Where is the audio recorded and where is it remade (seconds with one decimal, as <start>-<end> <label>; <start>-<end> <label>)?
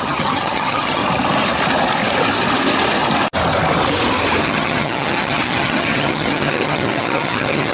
0.0-1.0 remade; 1.0-4.4 recorded; 4.4-7.7 remade